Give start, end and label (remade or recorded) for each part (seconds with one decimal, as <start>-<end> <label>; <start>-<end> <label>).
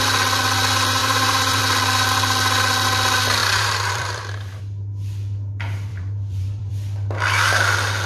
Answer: 0.0-1.0 recorded; 1.0-1.6 remade; 1.6-3.4 recorded; 3.4-4.6 remade; 4.6-5.9 recorded; 5.9-6.7 remade; 6.7-8.1 recorded